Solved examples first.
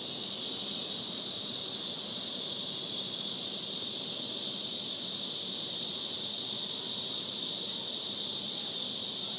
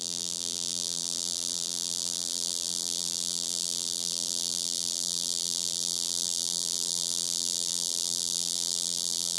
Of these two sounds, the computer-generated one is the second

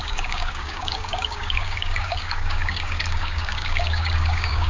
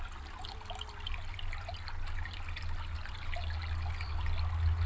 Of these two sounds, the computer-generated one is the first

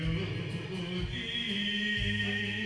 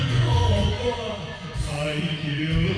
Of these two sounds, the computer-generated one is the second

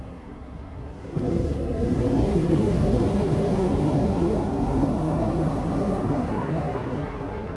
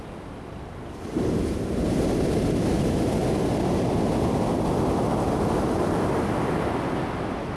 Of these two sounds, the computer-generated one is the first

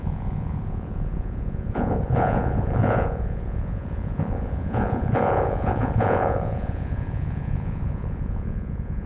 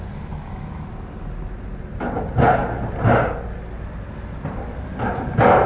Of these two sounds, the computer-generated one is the first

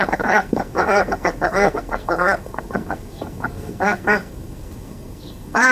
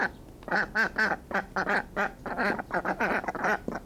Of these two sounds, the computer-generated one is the first